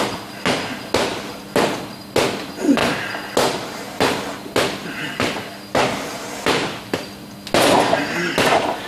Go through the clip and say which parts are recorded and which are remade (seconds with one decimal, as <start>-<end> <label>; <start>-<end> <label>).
0.0-8.9 recorded